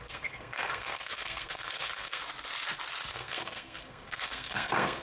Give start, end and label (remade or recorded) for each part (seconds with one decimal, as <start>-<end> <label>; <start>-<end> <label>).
0.0-2.2 remade; 2.2-3.1 recorded; 3.1-5.0 remade